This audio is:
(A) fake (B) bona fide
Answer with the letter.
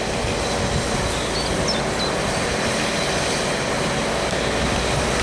B